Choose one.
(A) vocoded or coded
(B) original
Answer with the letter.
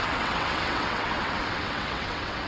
A